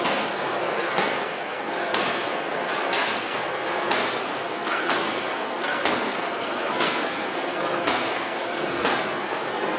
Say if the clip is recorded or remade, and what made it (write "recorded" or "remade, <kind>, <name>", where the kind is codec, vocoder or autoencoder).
remade, codec, SNAC